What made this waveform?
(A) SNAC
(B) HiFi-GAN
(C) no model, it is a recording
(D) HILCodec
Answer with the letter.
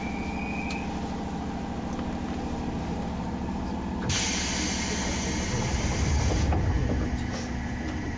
C